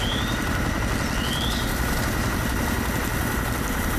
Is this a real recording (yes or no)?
yes